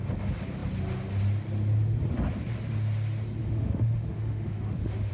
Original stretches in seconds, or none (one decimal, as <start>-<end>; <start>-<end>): 0.0-3.4